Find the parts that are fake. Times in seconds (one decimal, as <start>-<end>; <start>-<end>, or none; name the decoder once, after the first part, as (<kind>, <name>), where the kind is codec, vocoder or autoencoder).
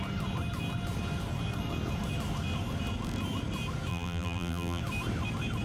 3.9-4.8 (vocoder, BigVGAN v2)